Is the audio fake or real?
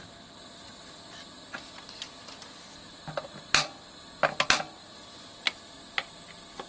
real